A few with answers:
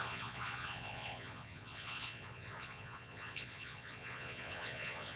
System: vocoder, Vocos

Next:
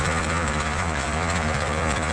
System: vocoder, Vocos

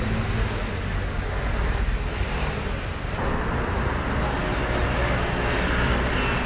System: none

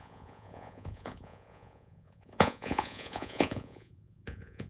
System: vocoder, Vocos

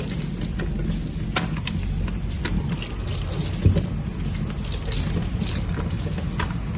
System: none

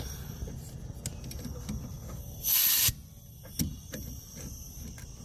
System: none